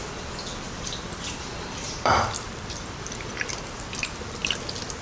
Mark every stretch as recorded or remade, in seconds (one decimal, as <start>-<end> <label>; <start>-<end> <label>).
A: 0.0-0.5 recorded; 0.5-3.5 remade; 3.5-5.0 recorded